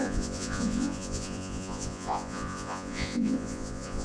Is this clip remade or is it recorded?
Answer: remade